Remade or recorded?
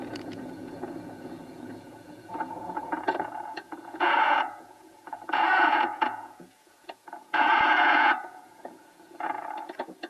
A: remade